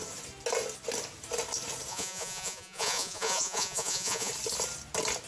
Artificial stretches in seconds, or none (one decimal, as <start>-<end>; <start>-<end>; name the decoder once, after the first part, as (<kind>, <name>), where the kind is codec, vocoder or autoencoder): 1.9-4.3 (vocoder, Vocos)